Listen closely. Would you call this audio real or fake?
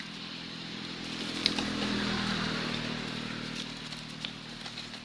fake